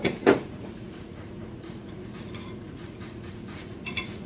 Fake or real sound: fake